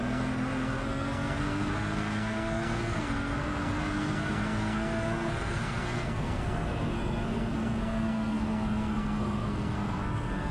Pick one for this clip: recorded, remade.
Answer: remade